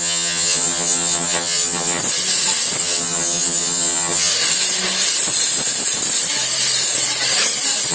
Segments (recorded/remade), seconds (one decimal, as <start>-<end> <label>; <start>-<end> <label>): 0.0-2.0 remade; 2.0-2.8 recorded; 2.8-4.3 remade; 4.3-7.9 recorded